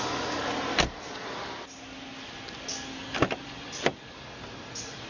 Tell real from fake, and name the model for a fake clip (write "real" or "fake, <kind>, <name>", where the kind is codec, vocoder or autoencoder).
real